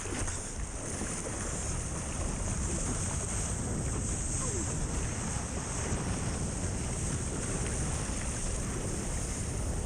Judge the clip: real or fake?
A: real